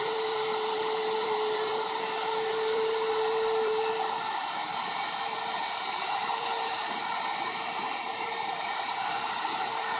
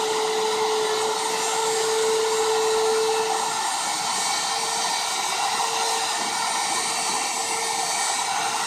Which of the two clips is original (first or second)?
second